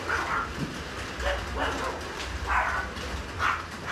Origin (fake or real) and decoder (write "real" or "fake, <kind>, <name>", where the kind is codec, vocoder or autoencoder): real